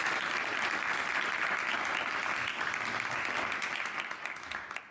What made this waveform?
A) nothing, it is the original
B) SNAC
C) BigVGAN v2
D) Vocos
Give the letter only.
A